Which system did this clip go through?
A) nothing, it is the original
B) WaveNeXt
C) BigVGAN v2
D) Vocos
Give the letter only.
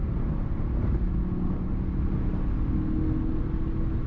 A